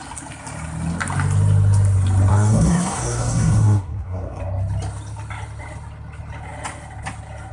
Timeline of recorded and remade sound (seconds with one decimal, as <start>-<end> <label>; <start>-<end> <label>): 0.0-2.3 recorded; 2.3-4.4 remade; 4.4-7.5 recorded